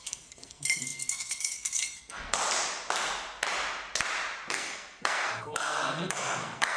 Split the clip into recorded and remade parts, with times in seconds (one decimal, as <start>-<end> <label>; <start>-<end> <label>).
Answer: 0.0-2.4 remade; 2.4-4.5 recorded; 4.5-6.8 remade

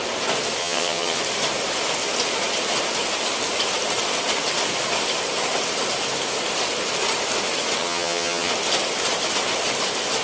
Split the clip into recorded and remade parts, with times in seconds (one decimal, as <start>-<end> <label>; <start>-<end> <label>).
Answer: 0.0-0.6 recorded; 0.6-1.2 remade; 1.2-7.8 recorded; 7.8-8.5 remade; 8.5-10.2 recorded